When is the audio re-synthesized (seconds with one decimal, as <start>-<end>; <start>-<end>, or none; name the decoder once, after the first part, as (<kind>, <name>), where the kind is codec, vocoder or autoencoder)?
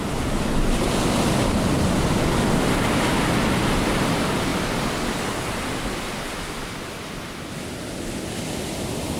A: 4.5-6.8 (vocoder, BigVGAN v2)